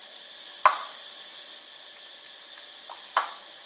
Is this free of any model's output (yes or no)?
yes